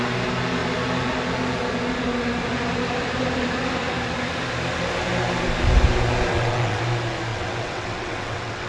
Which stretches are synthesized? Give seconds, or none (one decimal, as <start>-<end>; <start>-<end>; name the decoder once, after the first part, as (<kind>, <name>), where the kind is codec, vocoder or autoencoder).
6.3-6.8 (vocoder, WaveNeXt); 7.3-8.7